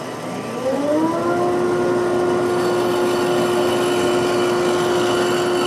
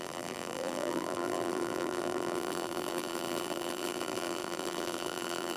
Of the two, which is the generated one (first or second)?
second